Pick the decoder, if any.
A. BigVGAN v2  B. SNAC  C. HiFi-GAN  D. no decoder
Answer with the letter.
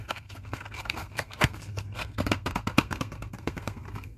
B